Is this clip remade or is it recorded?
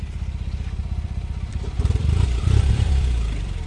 remade